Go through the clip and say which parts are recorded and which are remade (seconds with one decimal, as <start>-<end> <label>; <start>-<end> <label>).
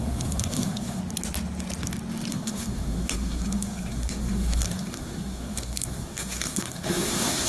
0.0-1.0 remade; 1.0-2.3 recorded; 2.3-7.5 remade